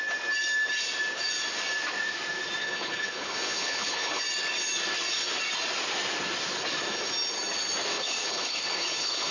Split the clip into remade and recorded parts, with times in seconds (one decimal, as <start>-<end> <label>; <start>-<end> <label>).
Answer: 0.0-2.6 recorded; 2.6-4.2 remade; 4.2-7.9 recorded; 7.9-9.3 remade

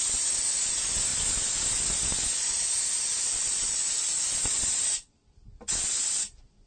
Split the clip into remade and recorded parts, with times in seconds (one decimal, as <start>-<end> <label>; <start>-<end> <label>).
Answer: 0.0-6.7 recorded